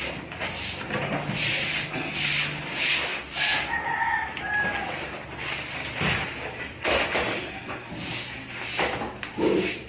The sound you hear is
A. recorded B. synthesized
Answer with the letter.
A